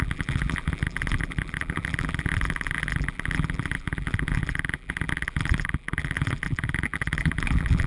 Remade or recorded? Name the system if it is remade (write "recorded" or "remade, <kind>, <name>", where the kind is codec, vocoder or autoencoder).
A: remade, vocoder, BigVGAN v2